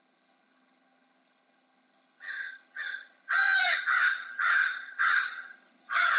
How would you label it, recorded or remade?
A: remade